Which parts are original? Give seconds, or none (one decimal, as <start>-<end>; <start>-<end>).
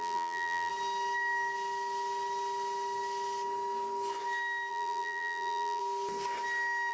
0.7-4.7; 5.8-6.9